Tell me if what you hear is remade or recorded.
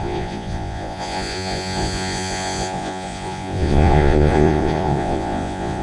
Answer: remade